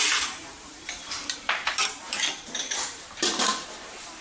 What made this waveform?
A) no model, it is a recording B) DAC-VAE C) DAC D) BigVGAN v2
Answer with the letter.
D